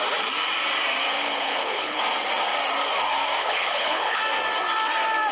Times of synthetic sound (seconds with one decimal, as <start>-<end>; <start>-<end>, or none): 1.2-2.0; 3.4-4.2